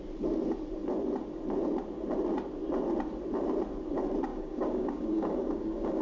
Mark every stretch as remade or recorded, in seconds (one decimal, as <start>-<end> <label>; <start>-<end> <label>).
0.0-4.3 recorded; 4.3-6.0 remade